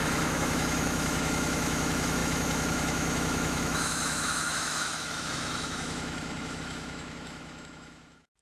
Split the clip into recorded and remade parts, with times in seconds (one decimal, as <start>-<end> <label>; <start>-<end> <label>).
0.0-8.4 remade